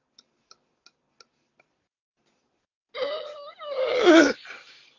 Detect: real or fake real